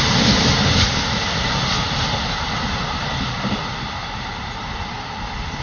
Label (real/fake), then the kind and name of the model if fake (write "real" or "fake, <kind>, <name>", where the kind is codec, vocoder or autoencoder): real